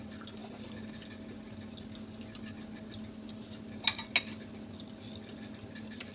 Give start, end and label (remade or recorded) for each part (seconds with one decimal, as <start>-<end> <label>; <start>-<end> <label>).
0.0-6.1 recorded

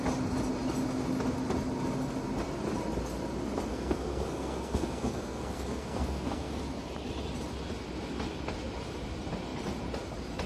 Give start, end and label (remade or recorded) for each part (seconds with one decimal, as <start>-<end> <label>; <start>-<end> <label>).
0.0-3.7 recorded; 3.7-6.6 remade; 6.6-10.5 recorded

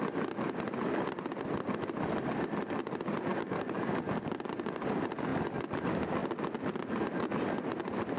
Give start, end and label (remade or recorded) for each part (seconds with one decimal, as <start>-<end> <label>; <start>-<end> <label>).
0.0-3.3 recorded; 3.3-3.9 remade; 3.9-8.2 recorded